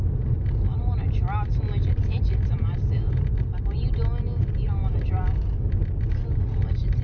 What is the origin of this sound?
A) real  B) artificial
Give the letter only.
A